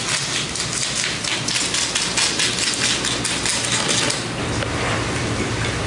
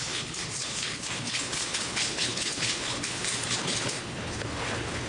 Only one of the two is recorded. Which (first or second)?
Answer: first